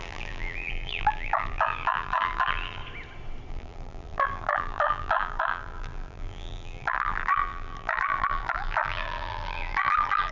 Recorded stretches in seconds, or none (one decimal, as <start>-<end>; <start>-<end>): 2.8-3.5